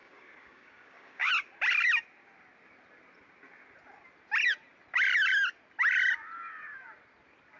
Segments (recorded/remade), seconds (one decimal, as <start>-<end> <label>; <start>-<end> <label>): 0.0-1.3 remade; 1.3-7.6 recorded